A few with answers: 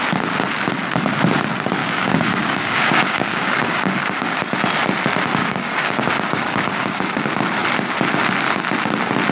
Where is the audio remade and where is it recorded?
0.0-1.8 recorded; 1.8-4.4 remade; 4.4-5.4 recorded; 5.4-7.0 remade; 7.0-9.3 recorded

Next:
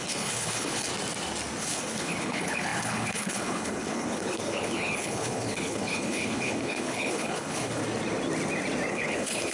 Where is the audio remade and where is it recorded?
0.0-0.9 remade; 0.9-1.6 recorded; 1.6-7.8 remade; 7.8-8.9 recorded; 8.9-9.5 remade